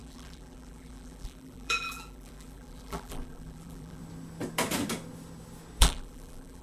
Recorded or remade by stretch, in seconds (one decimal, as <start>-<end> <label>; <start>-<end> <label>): 0.0-4.0 remade; 4.0-5.8 recorded; 5.8-6.6 remade

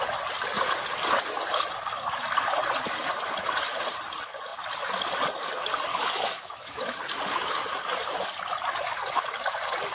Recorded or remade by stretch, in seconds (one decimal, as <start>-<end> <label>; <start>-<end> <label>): 0.0-5.9 recorded; 5.9-7.0 remade; 7.0-9.9 recorded

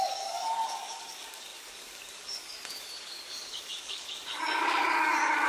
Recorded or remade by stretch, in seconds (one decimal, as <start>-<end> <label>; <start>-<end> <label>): 0.0-5.5 remade

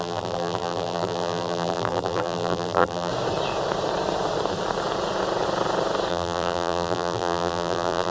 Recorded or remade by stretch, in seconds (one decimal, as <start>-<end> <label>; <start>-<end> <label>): 0.0-3.1 remade; 3.1-6.1 recorded; 6.1-8.1 remade